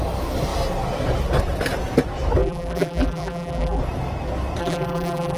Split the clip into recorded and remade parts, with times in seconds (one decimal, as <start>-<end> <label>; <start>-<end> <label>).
0.0-2.4 recorded; 2.4-3.8 remade; 3.8-4.6 recorded; 4.6-5.4 remade